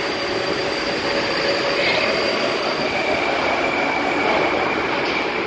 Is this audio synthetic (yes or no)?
yes